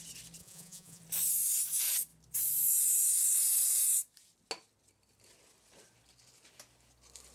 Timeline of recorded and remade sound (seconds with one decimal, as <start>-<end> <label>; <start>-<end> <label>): 0.0-0.4 recorded; 0.4-1.0 remade; 1.0-7.3 recorded